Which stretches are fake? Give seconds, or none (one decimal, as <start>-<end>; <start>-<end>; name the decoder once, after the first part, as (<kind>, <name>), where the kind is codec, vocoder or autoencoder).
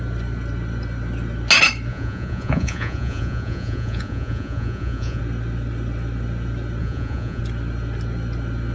1.9-5.2 (vocoder, Vocos); 6.8-7.4